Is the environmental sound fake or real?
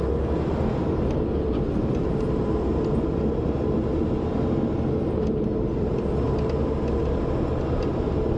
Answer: real